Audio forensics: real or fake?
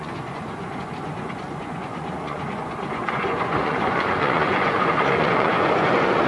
fake